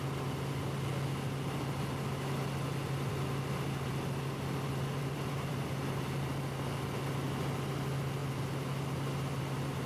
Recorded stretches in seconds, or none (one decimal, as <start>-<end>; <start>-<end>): 0.0-5.0; 5.7-9.9